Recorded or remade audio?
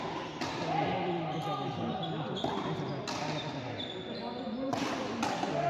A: recorded